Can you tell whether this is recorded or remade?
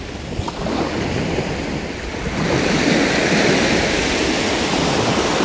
recorded